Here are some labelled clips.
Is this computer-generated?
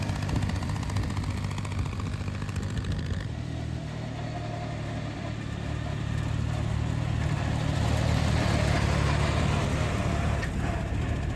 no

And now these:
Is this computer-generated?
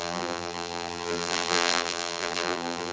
yes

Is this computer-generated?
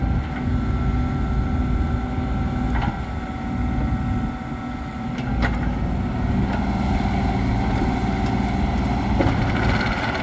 no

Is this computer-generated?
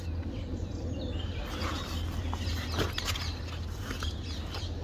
no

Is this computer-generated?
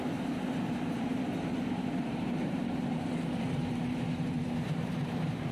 yes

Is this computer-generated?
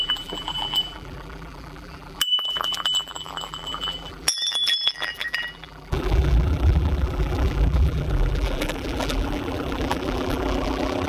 yes